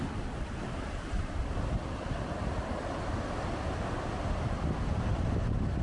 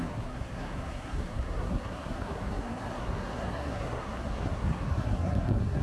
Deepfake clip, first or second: second